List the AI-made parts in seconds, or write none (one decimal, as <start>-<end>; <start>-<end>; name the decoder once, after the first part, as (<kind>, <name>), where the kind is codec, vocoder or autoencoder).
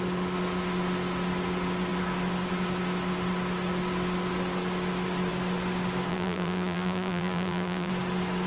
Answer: 6.1-7.9 (vocoder, BigVGAN v2)